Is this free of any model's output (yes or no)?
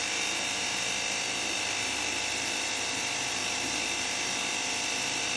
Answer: yes